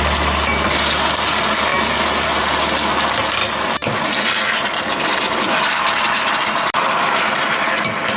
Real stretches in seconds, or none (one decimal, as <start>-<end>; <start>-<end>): 0.0-8.2